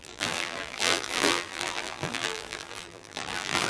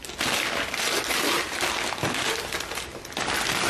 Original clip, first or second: second